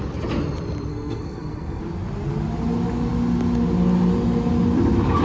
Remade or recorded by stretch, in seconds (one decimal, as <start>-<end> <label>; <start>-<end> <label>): 0.0-0.9 recorded; 0.9-1.8 remade; 1.8-5.2 recorded